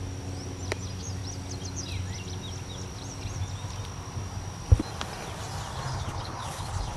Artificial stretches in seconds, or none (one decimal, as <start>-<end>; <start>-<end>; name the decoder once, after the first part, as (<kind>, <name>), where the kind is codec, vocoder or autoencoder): 5.9-7.0 (codec, HILCodec)

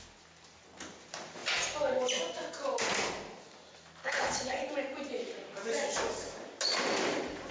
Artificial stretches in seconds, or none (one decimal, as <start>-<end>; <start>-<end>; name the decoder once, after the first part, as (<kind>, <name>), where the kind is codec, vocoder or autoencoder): 4.0-4.7 (codec, HILCodec)

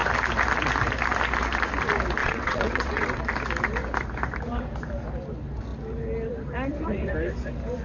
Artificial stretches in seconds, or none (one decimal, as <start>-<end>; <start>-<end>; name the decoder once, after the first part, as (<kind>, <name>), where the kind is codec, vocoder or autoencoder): 2.2-3.2 (vocoder, WaveNeXt)

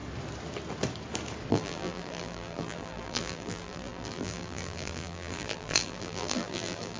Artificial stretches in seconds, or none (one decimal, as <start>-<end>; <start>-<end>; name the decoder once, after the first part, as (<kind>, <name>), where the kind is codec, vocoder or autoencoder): 1.5-7.0 (vocoder, BigVGAN v2)